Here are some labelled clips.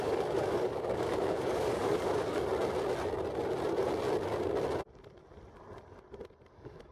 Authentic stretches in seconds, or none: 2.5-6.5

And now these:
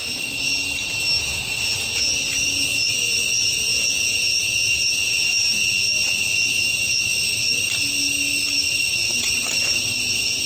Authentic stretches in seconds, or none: 0.0-3.7; 4.2-10.5

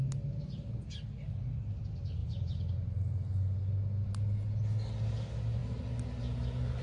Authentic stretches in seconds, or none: 0.0-6.8

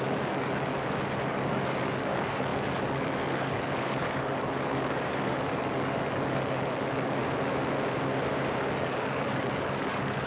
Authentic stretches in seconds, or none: 0.7-1.3; 7.2-8.8